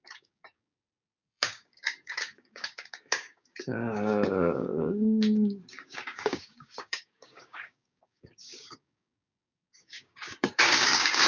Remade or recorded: remade